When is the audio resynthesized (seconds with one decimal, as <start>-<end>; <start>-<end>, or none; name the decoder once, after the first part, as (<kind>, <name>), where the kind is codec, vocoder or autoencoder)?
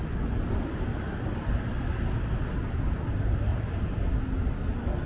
3.5-4.2 (vocoder, BigVGAN v2)